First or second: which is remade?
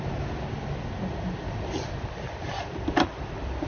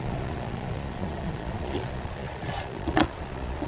second